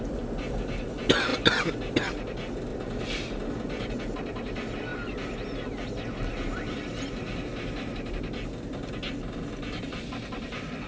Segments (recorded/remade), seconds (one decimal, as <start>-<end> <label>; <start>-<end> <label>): 0.0-10.9 recorded